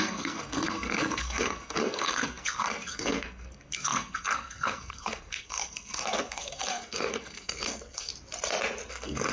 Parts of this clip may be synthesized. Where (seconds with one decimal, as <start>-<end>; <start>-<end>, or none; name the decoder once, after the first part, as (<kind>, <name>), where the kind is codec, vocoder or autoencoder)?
0.0-8.1 (codec, SNAC); 8.9-9.3